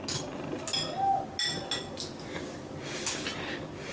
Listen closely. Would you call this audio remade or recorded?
recorded